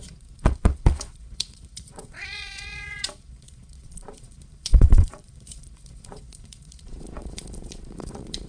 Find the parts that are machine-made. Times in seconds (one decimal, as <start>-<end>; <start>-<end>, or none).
0.0-8.5